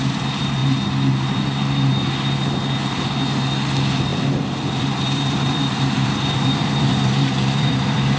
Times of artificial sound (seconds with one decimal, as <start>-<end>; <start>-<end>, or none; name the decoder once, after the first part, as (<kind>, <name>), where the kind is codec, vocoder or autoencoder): 4.1-8.2 (vocoder, BigVGAN v2)